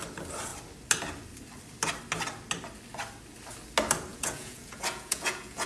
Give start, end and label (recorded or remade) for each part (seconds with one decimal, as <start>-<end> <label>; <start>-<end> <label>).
0.0-4.1 recorded; 4.1-5.7 remade